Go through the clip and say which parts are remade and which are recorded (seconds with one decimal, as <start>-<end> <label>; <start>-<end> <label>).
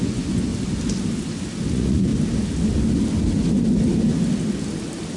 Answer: 0.0-0.5 remade; 0.5-1.7 recorded; 1.7-2.1 remade; 2.1-5.2 recorded